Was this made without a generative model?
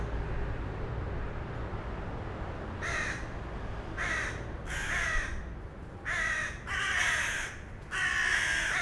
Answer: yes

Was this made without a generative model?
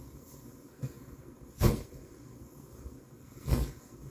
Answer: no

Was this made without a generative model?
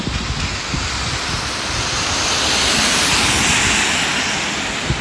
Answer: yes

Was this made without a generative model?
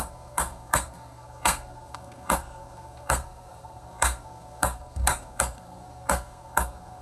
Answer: no